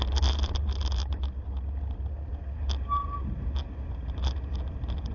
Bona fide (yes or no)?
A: yes